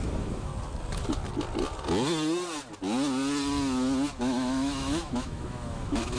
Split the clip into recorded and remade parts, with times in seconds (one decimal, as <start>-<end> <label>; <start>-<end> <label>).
0.0-0.5 remade; 0.5-4.2 recorded; 4.2-6.2 remade